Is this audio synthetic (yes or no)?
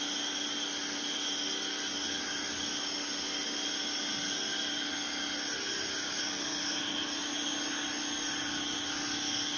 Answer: no